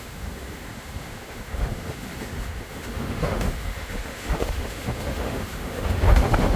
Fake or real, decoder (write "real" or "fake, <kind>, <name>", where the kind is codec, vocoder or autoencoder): fake, autoencoder, DAC-VAE